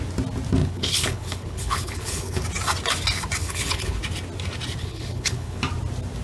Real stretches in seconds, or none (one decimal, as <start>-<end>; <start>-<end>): 0.0-0.6; 2.4-3.4; 4.0-4.8; 5.6-6.2